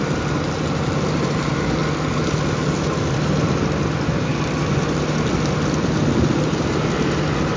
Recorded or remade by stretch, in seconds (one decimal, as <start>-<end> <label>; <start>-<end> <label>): 0.0-7.6 recorded